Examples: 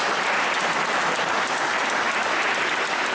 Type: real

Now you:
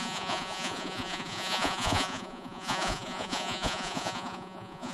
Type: fake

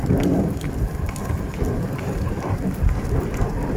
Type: real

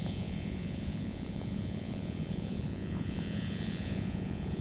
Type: fake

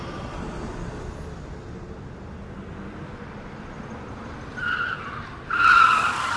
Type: real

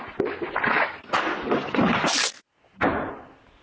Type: real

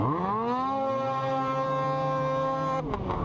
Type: real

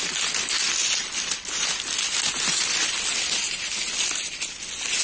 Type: real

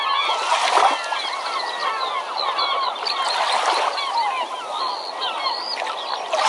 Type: real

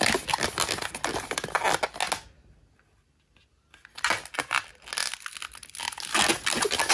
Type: real